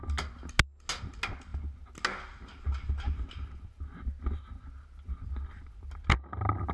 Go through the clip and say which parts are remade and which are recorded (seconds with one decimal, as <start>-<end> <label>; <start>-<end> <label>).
0.0-6.7 recorded